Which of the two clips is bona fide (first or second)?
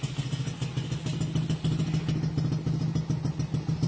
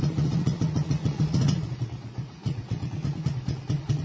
first